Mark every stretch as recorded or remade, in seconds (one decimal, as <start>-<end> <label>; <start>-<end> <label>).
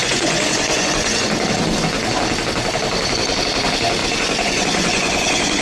0.0-1.3 remade; 1.3-4.0 recorded; 4.0-5.6 remade